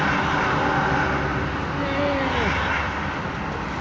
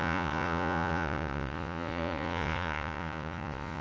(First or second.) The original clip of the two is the first